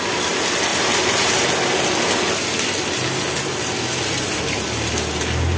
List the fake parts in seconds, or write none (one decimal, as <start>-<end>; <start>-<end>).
0.7-1.4